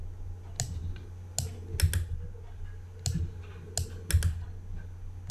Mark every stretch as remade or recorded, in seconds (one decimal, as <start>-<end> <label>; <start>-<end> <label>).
0.0-5.3 recorded